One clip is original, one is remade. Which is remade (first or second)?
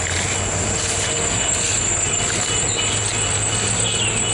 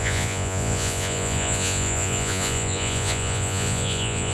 second